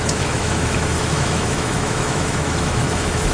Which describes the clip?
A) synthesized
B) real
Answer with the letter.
A